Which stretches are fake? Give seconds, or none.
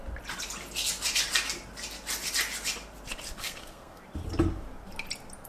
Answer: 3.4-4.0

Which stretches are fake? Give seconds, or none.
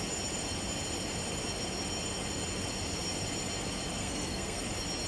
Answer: 4.0-4.6